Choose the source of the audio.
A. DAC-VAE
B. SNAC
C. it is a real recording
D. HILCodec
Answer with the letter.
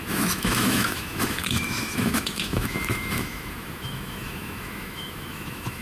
A